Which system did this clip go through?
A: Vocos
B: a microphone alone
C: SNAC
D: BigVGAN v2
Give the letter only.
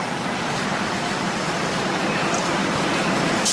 D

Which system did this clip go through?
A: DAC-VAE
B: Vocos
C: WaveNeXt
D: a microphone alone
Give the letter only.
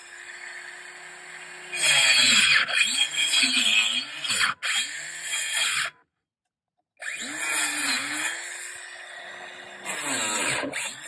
D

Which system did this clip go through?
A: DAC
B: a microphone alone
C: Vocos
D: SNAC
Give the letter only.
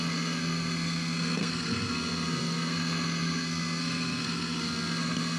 D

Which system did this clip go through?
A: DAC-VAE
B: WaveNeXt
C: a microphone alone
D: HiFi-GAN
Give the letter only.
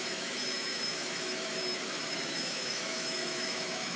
A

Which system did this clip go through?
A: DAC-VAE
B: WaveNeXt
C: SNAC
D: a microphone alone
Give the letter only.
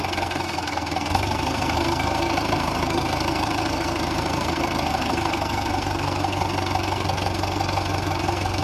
C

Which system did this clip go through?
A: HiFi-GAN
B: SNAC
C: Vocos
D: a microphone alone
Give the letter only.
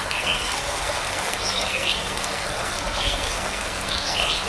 B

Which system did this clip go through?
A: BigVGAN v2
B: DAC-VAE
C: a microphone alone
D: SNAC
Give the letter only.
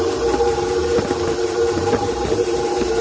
A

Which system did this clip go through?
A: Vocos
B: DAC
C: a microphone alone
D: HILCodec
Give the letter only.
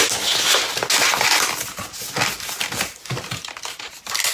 C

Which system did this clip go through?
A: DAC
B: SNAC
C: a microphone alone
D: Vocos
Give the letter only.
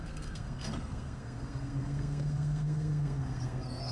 B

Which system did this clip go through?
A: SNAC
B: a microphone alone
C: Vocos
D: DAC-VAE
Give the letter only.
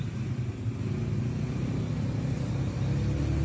B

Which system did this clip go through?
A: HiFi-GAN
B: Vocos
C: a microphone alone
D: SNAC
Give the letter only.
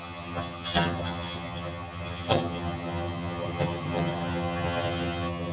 A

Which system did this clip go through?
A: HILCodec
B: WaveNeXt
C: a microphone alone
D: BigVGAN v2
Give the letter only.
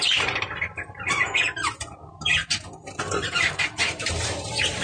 D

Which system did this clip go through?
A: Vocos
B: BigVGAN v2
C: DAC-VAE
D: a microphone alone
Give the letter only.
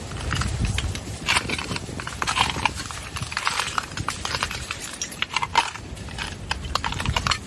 B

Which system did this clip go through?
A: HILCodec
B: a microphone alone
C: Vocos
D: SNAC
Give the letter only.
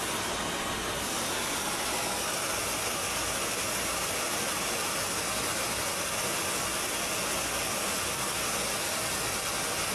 B